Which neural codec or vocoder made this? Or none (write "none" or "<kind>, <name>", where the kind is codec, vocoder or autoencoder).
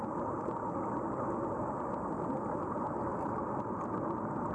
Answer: none